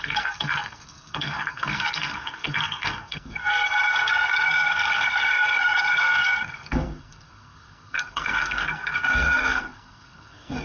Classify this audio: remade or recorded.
remade